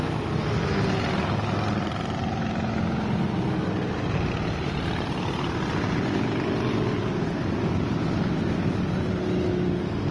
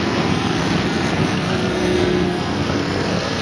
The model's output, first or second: second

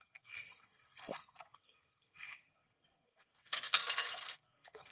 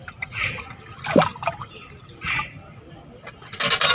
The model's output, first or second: first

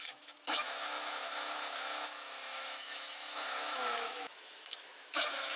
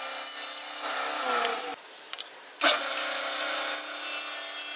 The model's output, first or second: first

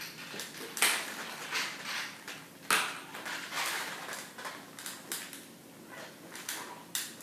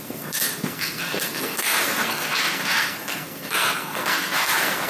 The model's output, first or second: second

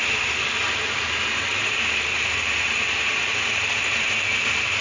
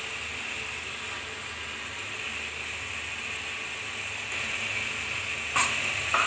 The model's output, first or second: first